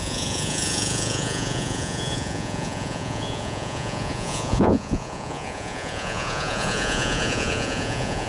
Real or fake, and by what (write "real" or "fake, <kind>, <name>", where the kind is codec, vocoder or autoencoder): fake, vocoder, Vocos